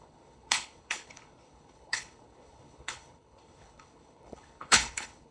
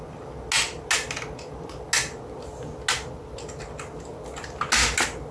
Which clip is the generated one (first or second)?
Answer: first